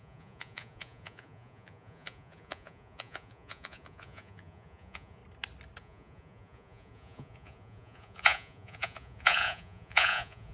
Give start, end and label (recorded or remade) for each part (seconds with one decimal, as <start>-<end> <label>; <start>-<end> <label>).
0.0-5.2 remade; 5.2-5.8 recorded; 5.8-10.5 remade